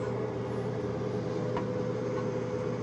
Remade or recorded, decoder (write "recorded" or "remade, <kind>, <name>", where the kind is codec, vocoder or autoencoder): recorded